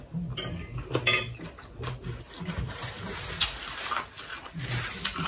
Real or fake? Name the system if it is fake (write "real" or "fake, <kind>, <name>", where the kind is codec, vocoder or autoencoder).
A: real